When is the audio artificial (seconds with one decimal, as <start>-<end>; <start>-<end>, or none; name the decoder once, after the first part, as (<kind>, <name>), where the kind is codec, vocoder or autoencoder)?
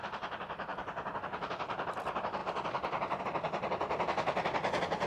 0.0-0.7 (vocoder, BigVGAN v2); 1.2-2.4; 3.2-5.1